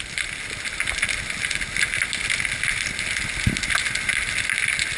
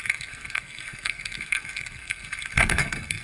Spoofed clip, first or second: second